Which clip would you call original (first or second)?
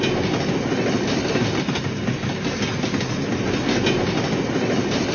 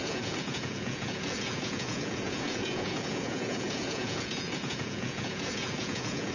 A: first